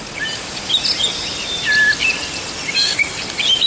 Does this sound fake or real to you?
real